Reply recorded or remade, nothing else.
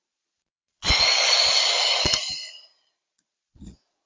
remade